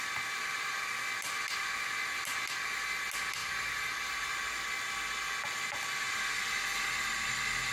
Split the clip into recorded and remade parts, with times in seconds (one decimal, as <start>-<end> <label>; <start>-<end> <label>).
0.0-3.4 recorded; 3.4-4.3 remade; 4.3-7.7 recorded